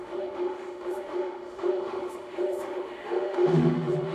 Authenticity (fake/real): fake